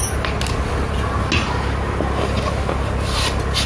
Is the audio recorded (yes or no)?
yes